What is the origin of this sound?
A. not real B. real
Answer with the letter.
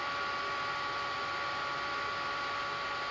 B